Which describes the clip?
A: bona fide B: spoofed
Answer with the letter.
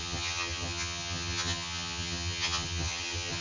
B